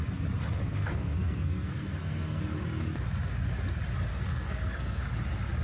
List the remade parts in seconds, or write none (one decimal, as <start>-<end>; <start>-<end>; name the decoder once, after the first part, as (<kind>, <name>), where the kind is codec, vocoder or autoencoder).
0.6-2.4 (codec, SNAC); 4.1-5.0